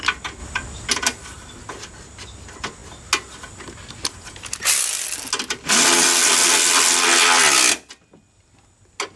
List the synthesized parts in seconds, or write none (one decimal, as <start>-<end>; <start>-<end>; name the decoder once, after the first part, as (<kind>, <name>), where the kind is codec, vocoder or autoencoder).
none